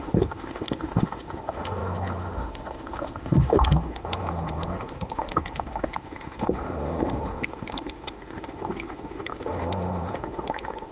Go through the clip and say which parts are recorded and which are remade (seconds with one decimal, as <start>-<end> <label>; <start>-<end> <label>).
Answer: 0.0-10.9 remade